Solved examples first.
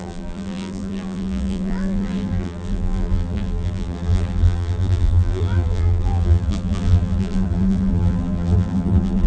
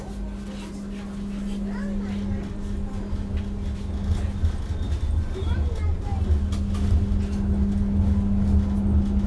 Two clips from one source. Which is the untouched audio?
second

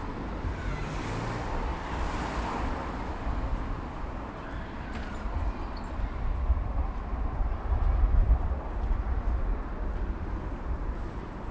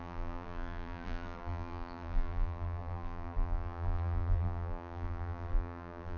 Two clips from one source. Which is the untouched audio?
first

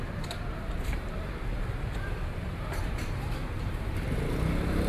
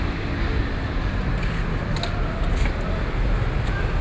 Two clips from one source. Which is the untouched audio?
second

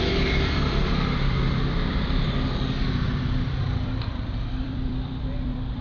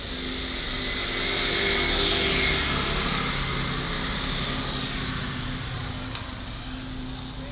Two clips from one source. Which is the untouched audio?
second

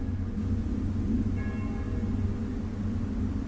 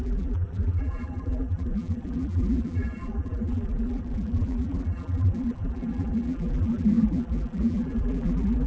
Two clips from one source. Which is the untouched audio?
first